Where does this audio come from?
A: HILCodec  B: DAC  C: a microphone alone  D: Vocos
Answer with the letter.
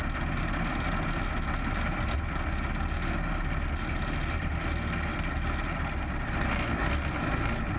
C